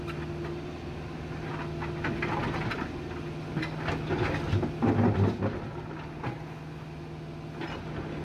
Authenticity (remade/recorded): recorded